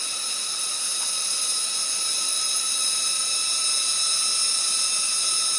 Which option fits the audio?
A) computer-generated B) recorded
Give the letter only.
B